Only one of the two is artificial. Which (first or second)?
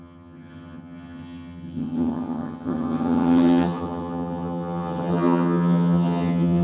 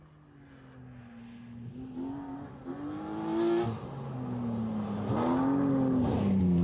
first